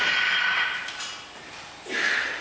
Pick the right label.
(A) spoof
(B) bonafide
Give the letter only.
B